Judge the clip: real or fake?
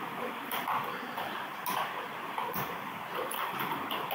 real